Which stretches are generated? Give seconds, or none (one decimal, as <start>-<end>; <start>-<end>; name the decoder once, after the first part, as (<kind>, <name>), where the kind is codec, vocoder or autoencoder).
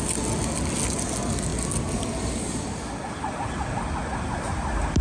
none